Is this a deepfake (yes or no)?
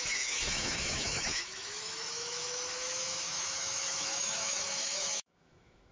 yes